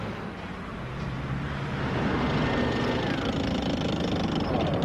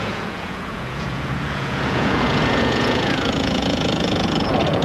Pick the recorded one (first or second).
first